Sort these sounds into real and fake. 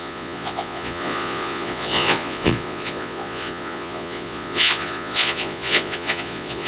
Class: fake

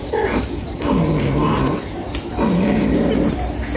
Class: real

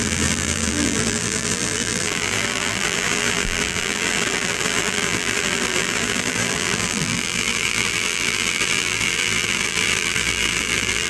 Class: fake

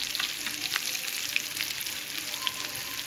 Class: real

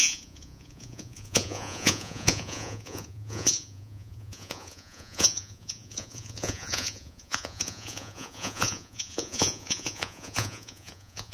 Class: fake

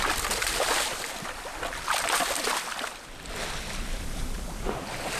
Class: real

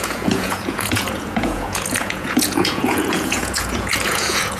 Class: fake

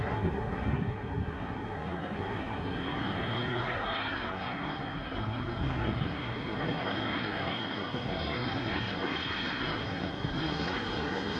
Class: fake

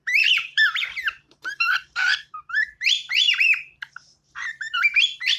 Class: fake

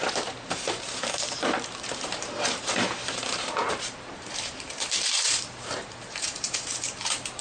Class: fake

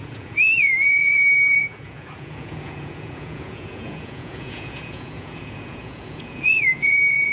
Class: fake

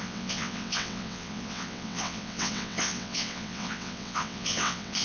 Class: fake